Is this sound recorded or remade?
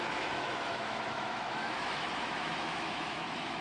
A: remade